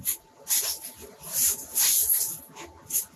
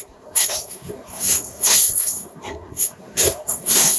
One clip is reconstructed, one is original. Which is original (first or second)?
first